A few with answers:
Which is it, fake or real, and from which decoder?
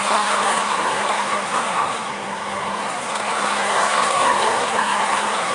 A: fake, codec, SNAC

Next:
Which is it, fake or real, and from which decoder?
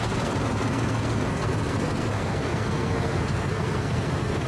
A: fake, codec, SNAC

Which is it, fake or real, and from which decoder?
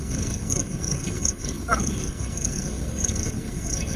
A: fake, codec, SNAC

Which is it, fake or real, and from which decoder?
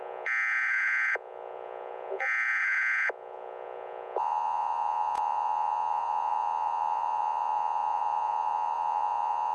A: fake, vocoder, Vocos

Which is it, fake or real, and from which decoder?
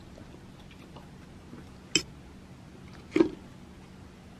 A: real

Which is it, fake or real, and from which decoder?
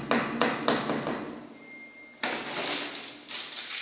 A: real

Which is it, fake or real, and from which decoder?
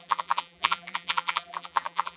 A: fake, vocoder, BigVGAN v2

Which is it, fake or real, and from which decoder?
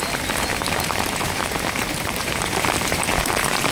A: fake, vocoder, BigVGAN v2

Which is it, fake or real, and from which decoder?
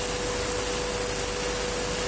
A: real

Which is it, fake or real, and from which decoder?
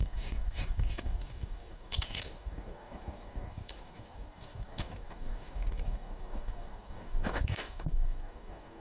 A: fake, codec, DAC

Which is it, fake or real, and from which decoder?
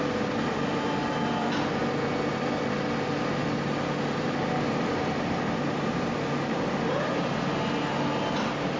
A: real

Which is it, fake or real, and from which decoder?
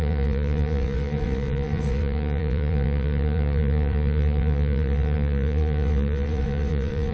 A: fake, vocoder, WaveNeXt